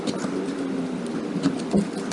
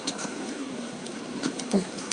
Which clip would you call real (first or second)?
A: first